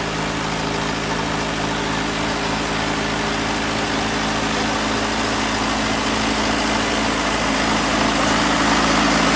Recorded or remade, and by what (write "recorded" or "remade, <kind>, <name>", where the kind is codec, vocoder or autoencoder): recorded